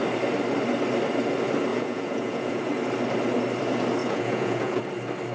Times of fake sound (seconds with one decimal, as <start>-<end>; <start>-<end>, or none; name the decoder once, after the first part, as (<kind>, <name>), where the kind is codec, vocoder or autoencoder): 1.7-2.6 (vocoder, Vocos); 4.0-4.8